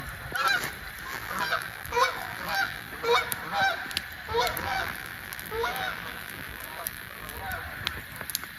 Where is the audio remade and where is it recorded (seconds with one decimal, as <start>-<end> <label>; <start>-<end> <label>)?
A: 0.0-1.1 recorded; 1.1-2.9 remade; 2.9-4.6 recorded; 4.6-7.4 remade; 7.4-8.6 recorded